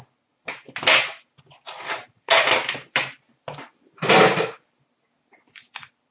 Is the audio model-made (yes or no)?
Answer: no